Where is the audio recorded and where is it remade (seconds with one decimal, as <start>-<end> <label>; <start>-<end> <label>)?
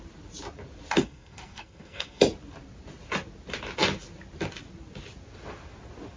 0.0-1.0 recorded; 1.0-2.2 remade; 2.2-6.2 recorded